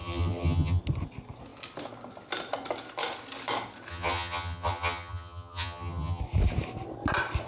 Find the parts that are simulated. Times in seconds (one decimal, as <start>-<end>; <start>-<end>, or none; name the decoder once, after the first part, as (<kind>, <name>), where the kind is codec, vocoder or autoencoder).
0.0-0.8 (vocoder, HiFi-GAN); 3.9-6.2